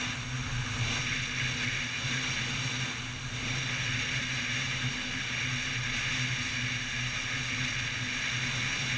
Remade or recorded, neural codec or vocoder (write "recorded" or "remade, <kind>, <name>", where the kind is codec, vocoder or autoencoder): recorded